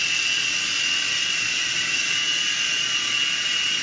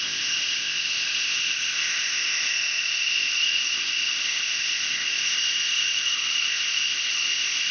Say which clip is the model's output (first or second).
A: second